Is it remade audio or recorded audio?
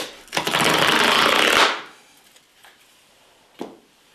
recorded